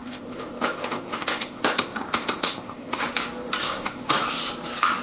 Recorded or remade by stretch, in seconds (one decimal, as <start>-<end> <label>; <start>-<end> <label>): 0.0-3.0 remade; 3.0-3.6 recorded; 3.6-4.1 remade; 4.1-5.0 recorded